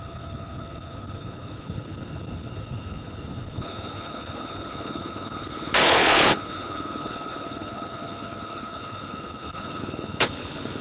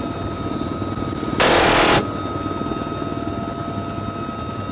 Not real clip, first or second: first